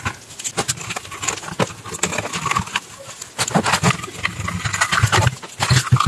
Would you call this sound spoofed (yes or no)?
no